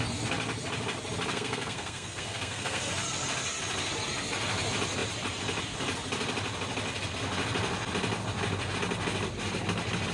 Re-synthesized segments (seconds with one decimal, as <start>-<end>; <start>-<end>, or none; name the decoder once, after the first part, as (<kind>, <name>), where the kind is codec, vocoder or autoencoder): 1.3-2.9 (codec, SNAC)